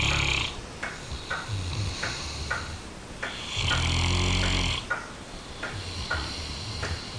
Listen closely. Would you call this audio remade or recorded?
recorded